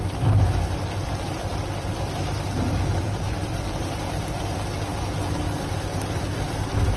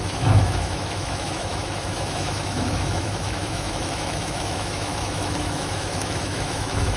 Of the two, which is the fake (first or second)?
second